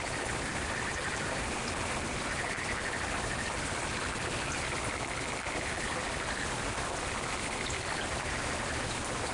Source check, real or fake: fake